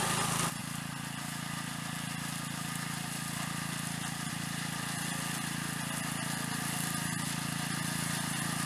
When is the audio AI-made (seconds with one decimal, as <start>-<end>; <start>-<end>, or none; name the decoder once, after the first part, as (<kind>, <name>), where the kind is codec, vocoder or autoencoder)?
none